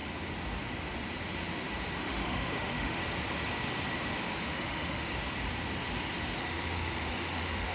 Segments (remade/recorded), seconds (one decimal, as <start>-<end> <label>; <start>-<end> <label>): 0.0-2.0 recorded; 2.0-3.0 remade; 3.0-4.4 recorded; 4.4-5.1 remade; 5.1-6.4 recorded; 6.4-7.7 remade